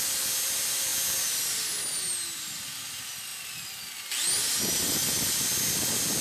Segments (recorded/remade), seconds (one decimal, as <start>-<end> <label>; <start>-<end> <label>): 0.0-6.2 recorded